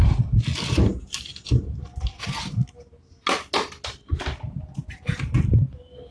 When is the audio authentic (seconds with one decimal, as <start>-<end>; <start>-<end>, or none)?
0.0-6.1